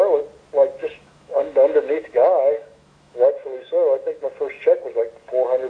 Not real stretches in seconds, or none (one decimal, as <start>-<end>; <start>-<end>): 0.8-4.2

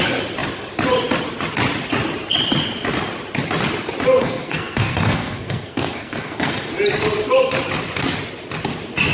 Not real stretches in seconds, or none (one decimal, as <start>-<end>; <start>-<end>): 4.2-6.7

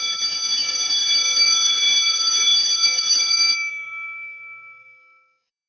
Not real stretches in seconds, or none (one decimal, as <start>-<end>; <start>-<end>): 0.0-5.7

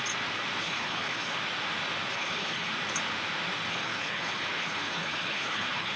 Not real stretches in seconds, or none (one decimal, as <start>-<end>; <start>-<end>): 0.6-1.4; 2.1-2.7; 3.7-6.0

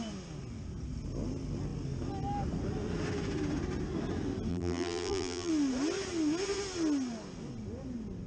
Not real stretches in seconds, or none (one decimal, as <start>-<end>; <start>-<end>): 4.5-5.5

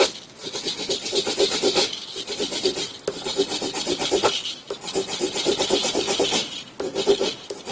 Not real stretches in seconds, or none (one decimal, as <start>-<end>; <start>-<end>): none

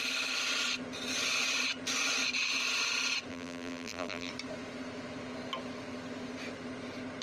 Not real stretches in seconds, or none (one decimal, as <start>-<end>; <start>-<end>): 3.3-4.3